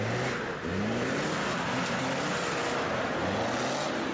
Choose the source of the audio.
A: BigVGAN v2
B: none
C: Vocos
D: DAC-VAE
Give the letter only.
B